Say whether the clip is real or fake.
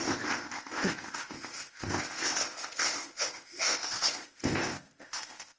fake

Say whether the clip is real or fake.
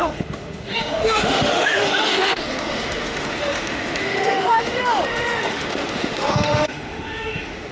fake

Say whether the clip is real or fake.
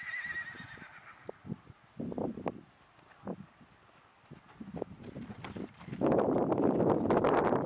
real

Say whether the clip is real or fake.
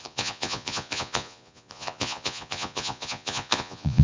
fake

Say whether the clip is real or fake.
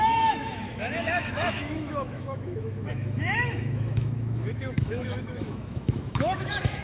fake